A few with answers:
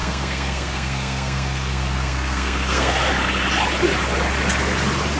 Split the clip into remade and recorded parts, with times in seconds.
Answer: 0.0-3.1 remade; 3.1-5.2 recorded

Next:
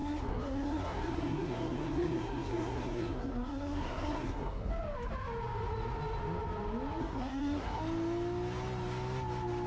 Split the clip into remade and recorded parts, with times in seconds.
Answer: 0.0-4.7 remade; 4.7-7.0 recorded; 7.0-7.8 remade; 7.8-9.7 recorded

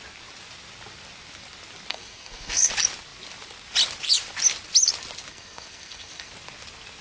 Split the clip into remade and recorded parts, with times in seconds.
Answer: 0.0-1.9 recorded; 1.9-2.7 remade; 2.7-5.3 recorded; 5.3-6.3 remade; 6.3-7.0 recorded